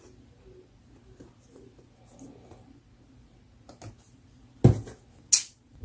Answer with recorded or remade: recorded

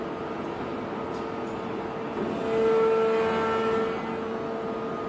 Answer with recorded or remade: recorded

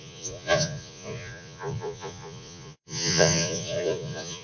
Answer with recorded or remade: remade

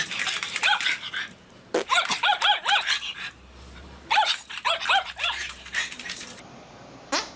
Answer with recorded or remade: remade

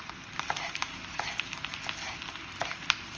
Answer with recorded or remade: recorded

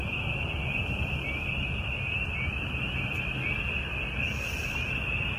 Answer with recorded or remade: recorded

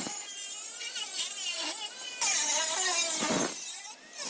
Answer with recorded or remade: recorded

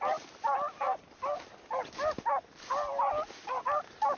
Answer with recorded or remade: recorded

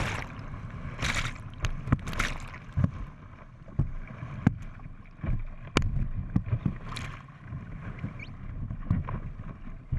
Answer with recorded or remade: recorded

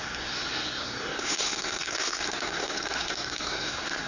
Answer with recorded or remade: remade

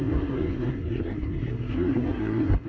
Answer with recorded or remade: remade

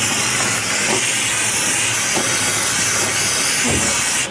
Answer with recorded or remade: recorded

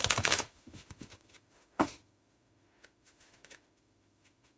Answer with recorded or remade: remade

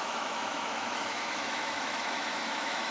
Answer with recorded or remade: remade